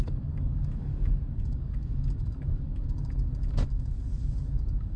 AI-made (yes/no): yes